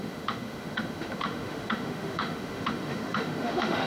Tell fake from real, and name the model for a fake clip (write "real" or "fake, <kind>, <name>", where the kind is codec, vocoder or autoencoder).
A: fake, autoencoder, DAC-VAE